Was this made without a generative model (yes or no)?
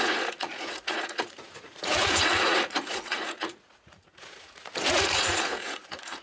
no